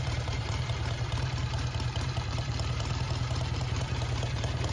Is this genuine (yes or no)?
no